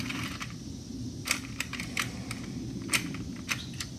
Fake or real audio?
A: fake